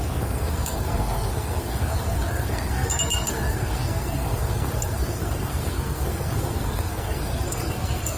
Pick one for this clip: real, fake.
fake